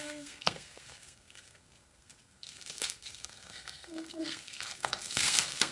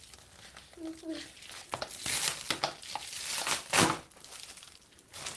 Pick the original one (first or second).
second